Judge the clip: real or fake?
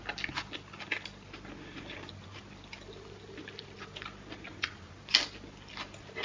real